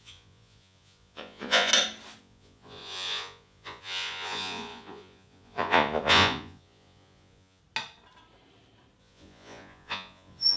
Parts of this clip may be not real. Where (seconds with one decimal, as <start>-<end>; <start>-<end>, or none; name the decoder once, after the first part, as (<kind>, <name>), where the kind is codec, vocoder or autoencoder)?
0.0-1.7 (vocoder, Vocos); 2.2-7.6; 9.0-10.6